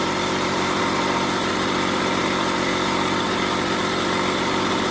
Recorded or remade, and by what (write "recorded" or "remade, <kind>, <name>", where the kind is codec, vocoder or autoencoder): remade, vocoder, BigVGAN v2